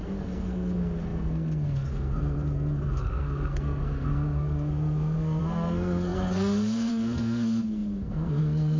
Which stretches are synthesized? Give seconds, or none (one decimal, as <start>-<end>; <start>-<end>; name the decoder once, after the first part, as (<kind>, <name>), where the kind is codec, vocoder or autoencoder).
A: 0.0-8.8 (codec, SNAC)

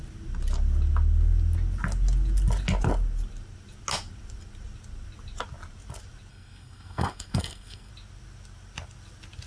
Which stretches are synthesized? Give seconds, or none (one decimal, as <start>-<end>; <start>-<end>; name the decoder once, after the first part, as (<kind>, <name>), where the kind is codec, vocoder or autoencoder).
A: 6.3-7.9 (codec, SNAC)

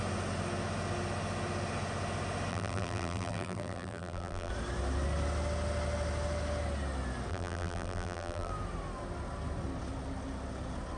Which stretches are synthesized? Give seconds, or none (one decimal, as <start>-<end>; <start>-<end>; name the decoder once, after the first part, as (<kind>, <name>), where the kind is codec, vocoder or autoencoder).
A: 2.5-4.5 (vocoder, BigVGAN v2); 7.3-8.5

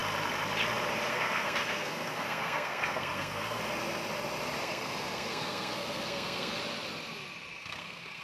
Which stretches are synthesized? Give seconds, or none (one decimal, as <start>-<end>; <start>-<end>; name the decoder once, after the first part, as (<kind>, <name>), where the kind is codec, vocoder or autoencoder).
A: 1.1-3.6 (codec, SNAC); 4.6-6.6; 7.6-8.2

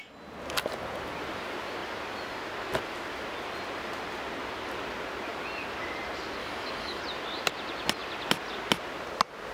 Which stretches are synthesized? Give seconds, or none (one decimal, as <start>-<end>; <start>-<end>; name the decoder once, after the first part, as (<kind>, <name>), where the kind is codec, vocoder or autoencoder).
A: 6.4-7.0 (codec, DAC)

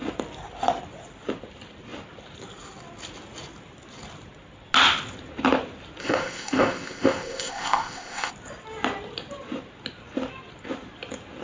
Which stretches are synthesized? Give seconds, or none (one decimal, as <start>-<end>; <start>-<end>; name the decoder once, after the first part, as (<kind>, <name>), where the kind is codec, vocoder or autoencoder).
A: 6.0-8.3 (codec, ZipCodec)

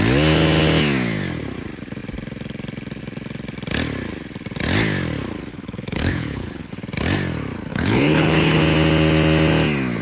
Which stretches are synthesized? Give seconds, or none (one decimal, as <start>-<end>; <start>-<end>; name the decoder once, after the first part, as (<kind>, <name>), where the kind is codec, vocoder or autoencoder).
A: 5.5-6.7 (codec, HILCodec); 7.7-8.6

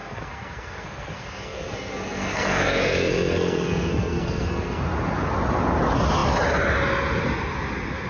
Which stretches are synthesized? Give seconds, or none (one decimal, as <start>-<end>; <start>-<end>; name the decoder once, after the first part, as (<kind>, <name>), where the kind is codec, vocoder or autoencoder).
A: 0.0-4.8 (codec, SNAC)